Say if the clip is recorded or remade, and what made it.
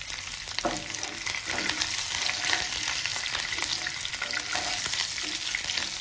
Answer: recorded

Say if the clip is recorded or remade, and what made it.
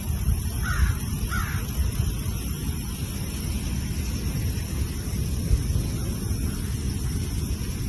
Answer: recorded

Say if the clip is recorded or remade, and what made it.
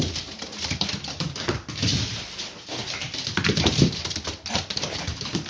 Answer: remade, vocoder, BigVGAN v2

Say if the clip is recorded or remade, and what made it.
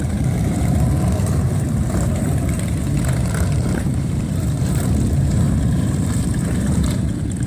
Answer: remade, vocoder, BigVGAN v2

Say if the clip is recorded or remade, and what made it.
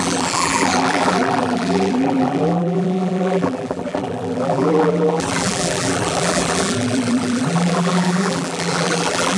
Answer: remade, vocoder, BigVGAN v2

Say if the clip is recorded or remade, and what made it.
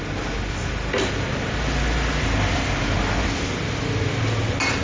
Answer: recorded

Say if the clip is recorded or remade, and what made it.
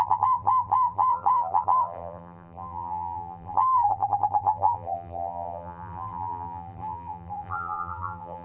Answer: remade, vocoder, BigVGAN v2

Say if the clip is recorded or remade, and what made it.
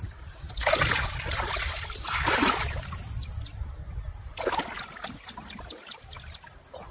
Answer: recorded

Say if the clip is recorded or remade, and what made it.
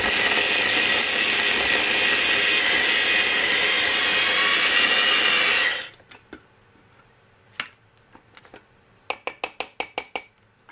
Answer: recorded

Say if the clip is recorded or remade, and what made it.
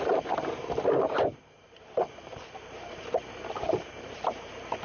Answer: remade, vocoder, BigVGAN v2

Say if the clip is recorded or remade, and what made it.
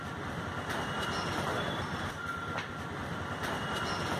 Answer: recorded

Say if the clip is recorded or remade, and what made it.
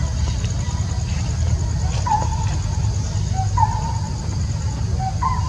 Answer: recorded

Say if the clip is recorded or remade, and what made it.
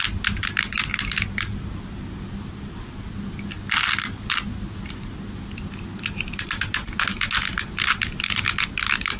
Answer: recorded